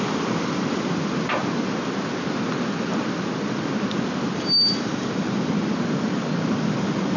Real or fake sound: real